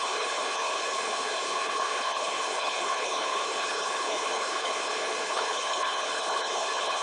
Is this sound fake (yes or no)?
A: yes